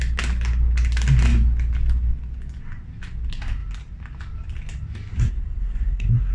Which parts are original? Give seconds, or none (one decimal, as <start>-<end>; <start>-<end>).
0.0-5.1